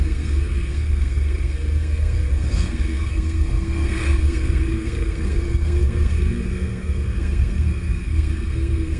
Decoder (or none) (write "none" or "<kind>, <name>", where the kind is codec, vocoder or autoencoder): codec, SNAC